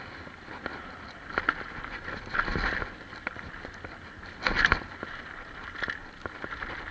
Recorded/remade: recorded